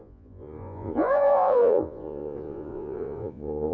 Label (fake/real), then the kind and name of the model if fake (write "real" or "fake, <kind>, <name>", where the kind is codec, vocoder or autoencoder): fake, vocoder, Vocos